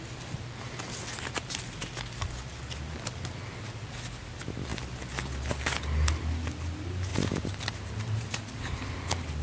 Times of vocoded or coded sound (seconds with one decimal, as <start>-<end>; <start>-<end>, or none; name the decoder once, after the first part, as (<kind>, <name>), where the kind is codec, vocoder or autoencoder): 7.1-8.4 (vocoder, BigVGAN v2)